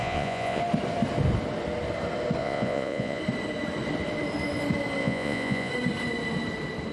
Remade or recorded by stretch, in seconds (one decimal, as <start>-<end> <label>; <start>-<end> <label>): 0.0-0.6 remade; 0.6-2.4 recorded; 2.4-3.2 remade; 3.2-5.0 recorded; 5.0-5.7 remade; 5.7-6.9 recorded